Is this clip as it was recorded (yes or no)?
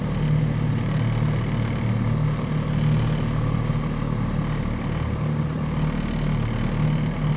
yes